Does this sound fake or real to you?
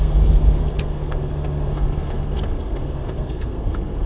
fake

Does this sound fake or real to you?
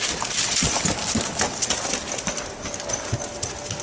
real